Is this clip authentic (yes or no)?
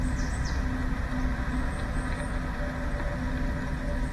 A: yes